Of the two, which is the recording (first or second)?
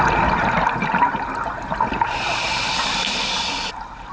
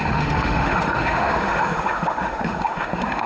first